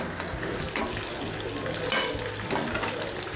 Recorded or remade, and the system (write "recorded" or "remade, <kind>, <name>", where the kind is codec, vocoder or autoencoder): recorded